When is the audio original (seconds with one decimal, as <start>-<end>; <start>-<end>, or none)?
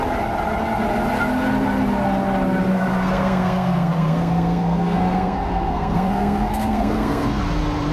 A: 0.0-2.7; 7.4-7.9